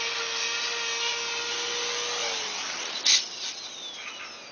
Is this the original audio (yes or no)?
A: yes